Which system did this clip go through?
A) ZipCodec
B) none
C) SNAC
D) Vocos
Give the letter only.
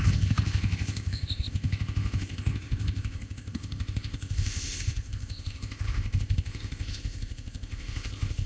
A